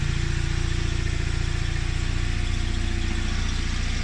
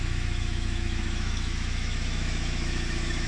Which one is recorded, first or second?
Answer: first